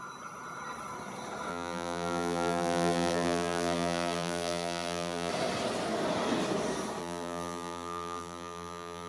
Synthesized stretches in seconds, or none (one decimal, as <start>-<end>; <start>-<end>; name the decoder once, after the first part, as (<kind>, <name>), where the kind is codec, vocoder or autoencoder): 1.5-5.3 (vocoder, BigVGAN v2); 7.0-9.1